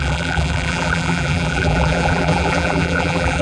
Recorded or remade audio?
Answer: remade